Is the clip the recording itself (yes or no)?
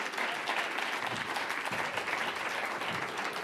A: yes